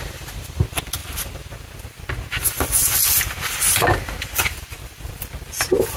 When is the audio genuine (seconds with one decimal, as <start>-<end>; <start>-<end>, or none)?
0.0-1.0; 1.6-2.8